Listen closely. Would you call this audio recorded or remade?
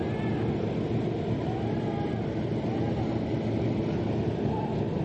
recorded